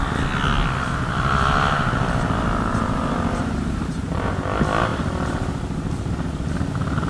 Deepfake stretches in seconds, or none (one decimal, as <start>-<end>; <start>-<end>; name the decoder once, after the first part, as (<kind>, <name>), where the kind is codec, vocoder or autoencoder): 2.7-4.3 (vocoder, BigVGAN v2)